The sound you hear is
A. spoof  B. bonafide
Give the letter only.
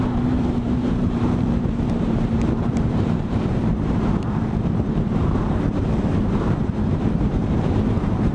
A